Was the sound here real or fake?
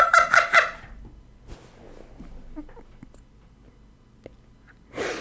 real